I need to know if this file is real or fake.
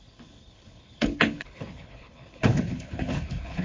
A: fake